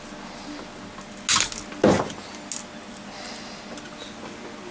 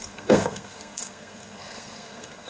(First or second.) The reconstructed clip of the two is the second